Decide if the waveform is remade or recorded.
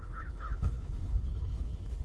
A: remade